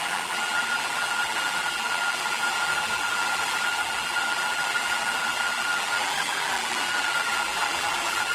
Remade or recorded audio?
remade